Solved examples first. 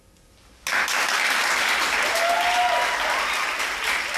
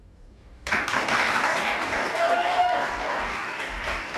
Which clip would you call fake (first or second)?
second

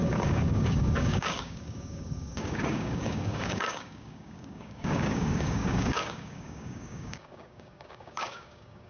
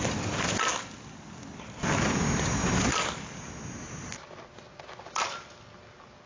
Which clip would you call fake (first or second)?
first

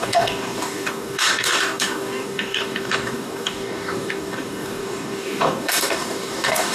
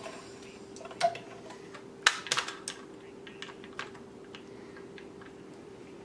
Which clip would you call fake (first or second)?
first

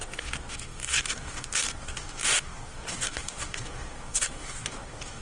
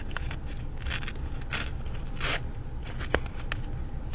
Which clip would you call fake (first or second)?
first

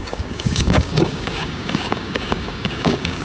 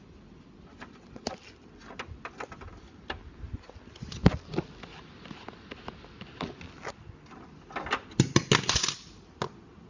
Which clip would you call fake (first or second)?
first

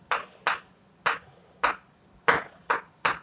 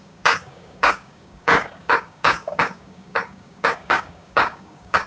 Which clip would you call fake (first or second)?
second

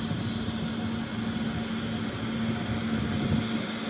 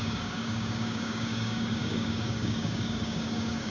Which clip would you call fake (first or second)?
second